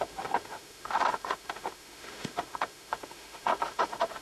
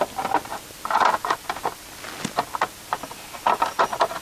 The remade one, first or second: first